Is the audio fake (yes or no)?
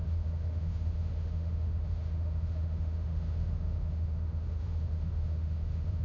yes